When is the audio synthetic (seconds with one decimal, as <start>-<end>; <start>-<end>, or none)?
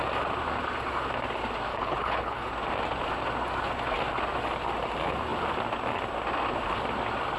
1.7-2.5